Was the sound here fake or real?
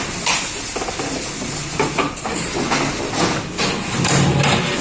real